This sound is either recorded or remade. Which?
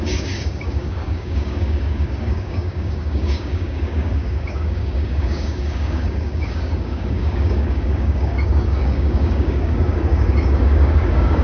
remade